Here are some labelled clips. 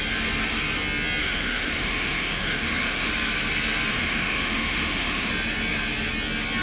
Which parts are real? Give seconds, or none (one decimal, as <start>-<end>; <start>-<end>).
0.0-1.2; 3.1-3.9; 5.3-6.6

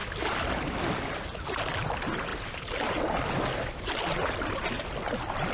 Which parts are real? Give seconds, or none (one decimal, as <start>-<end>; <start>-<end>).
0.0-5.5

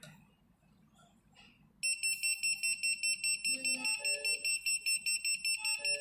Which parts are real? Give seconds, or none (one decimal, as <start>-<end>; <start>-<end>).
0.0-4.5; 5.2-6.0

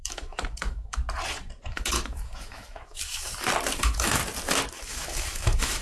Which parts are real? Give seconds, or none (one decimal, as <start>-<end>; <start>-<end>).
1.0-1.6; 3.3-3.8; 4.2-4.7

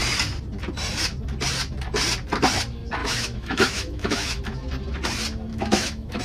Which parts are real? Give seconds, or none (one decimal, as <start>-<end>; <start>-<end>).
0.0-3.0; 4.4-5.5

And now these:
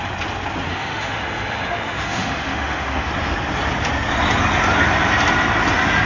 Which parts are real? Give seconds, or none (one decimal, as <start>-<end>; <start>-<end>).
0.0-0.7; 3.1-6.1

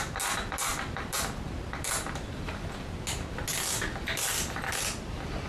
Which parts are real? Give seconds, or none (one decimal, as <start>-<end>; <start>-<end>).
0.0-5.5

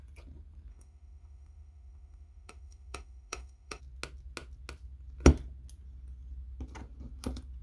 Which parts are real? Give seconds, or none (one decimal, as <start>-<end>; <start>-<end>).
0.0-0.7; 3.8-7.6